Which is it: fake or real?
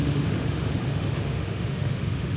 fake